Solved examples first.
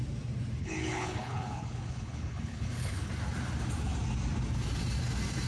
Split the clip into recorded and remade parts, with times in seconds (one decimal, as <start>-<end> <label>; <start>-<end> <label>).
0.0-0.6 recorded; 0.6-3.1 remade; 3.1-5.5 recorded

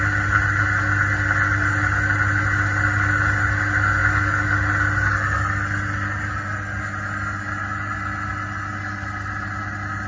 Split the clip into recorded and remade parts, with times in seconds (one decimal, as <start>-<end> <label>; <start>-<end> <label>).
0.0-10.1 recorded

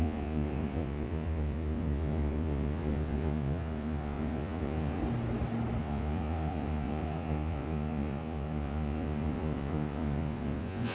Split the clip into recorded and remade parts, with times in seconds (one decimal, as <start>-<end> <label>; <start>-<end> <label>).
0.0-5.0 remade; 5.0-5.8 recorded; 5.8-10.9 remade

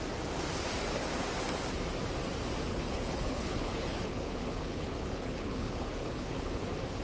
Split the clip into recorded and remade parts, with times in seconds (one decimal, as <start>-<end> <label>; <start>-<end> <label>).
0.0-2.7 recorded; 2.7-6.6 remade; 6.6-7.0 recorded

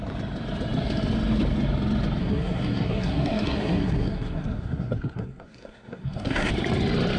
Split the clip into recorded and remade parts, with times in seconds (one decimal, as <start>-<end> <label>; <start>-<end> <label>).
0.0-2.2 recorded; 2.2-6.5 remade; 6.5-7.2 recorded